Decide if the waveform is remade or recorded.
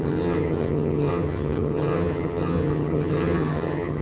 remade